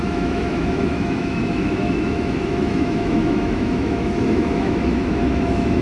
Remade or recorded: remade